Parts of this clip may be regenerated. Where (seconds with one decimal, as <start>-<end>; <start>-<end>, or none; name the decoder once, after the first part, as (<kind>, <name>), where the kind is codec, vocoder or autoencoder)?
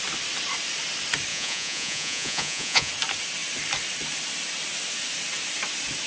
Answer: 1.3-2.9 (vocoder, Vocos)